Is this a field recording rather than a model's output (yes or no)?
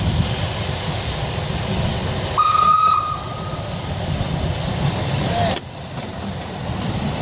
yes